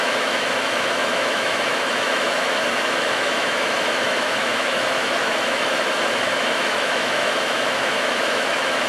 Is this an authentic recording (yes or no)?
no